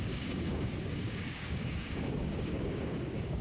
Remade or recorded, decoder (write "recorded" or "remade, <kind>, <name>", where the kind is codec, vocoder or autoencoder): remade, codec, DAC